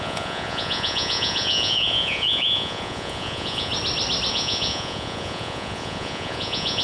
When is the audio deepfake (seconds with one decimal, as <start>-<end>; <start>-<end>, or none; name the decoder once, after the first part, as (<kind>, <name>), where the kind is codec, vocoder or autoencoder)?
0.0-3.7 (vocoder, Vocos); 4.3-6.8